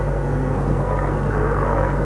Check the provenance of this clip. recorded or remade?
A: remade